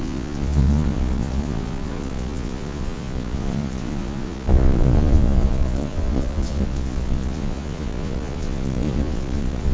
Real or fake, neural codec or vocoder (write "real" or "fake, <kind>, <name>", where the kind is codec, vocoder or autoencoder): fake, vocoder, Vocos